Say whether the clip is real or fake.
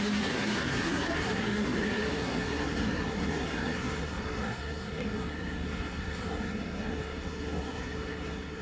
fake